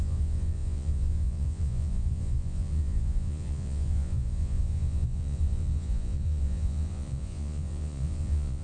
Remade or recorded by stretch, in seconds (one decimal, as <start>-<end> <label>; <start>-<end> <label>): 0.0-8.6 remade